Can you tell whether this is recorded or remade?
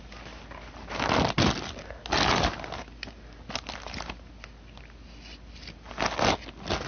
recorded